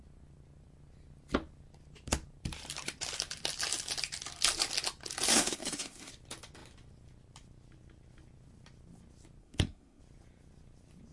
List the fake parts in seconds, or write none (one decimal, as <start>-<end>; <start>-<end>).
5.3-6.1; 9.4-10.0